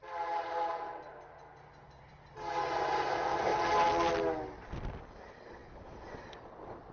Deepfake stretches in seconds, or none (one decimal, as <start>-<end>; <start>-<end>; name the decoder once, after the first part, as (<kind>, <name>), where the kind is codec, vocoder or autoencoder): none